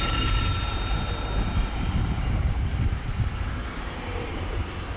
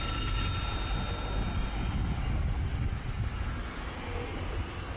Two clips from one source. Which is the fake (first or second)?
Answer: first